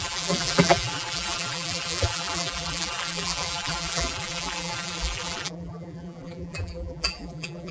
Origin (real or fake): fake